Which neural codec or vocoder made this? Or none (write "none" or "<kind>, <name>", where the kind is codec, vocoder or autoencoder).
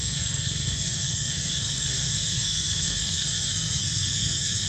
codec, SNAC